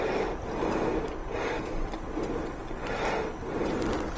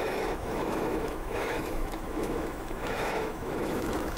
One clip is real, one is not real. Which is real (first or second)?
first